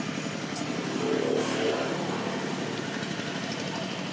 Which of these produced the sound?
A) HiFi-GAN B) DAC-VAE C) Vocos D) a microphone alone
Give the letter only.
D